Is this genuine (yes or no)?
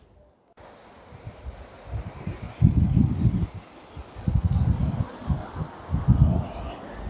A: yes